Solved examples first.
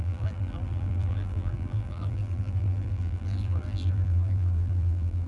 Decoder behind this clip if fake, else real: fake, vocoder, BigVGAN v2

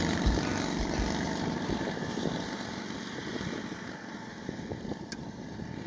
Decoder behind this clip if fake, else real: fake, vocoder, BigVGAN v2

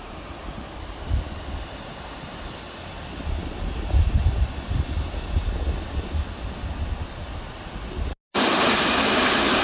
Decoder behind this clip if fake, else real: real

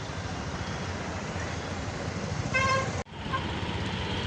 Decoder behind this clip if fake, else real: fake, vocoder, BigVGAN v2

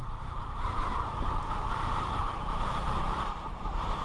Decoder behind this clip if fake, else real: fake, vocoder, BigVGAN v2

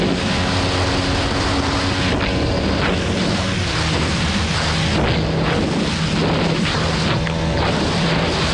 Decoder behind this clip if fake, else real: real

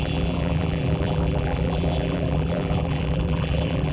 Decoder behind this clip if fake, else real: fake, vocoder, BigVGAN v2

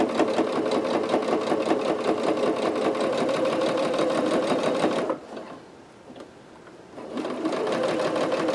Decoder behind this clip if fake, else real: real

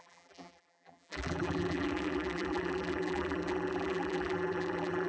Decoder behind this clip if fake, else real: fake, vocoder, BigVGAN v2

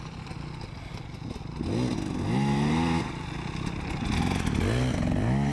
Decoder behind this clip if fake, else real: real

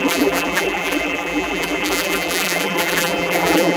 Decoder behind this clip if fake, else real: fake, vocoder, BigVGAN v2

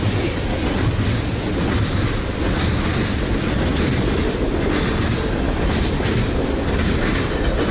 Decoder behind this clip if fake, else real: real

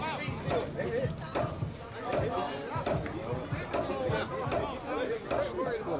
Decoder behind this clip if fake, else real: real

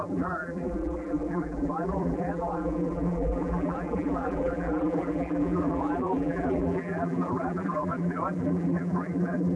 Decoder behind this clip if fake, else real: fake, vocoder, BigVGAN v2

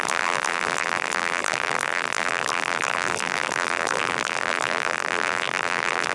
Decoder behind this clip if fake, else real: fake, vocoder, BigVGAN v2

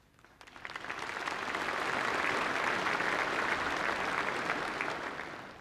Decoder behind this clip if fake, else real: real